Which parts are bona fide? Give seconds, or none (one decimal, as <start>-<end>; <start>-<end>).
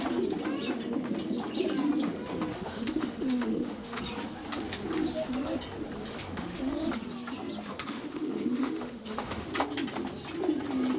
0.0-2.5; 4.0-6.1; 6.9-7.7; 9.5-11.0